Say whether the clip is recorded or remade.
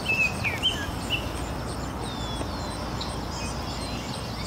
recorded